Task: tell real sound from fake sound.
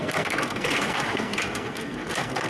fake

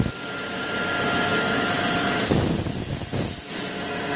real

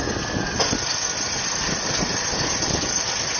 real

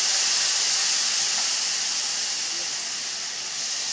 real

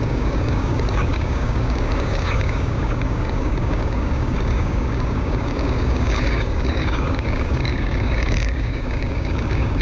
fake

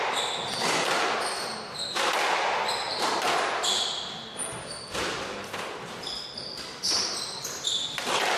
real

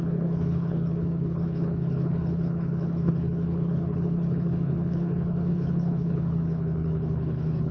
fake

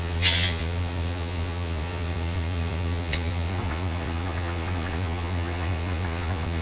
fake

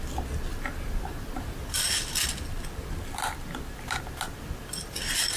real